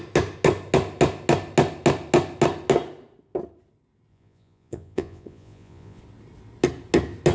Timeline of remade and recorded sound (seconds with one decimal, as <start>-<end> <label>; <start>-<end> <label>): 0.0-4.1 recorded; 4.1-6.0 remade; 6.0-7.3 recorded